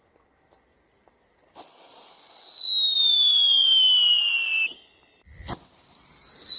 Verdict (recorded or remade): recorded